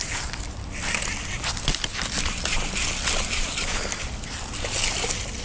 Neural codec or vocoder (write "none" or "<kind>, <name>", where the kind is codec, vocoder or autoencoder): none